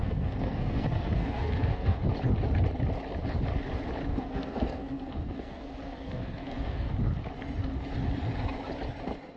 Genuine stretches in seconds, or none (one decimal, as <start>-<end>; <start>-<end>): 2.0-4.1; 6.9-9.4